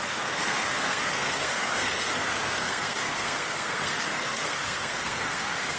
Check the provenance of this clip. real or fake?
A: fake